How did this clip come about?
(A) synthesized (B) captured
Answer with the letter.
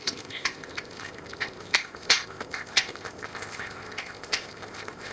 A